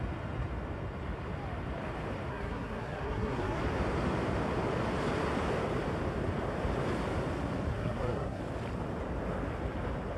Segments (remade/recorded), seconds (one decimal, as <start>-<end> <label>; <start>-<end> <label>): 0.0-2.3 recorded; 2.3-3.6 remade; 3.6-7.7 recorded; 7.7-8.4 remade; 8.4-10.2 recorded